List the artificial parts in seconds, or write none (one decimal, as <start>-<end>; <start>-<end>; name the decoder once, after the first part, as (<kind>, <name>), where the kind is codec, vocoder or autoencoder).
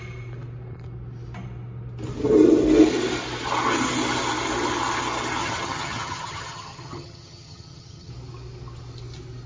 5.4-8.1 (vocoder, HiFi-GAN)